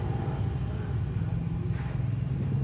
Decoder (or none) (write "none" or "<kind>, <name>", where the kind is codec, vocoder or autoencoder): none